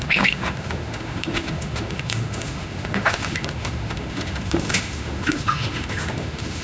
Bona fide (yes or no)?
no